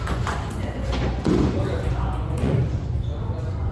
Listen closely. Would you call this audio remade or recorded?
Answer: remade